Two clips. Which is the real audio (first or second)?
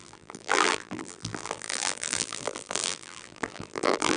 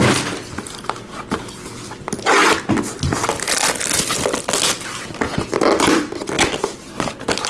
second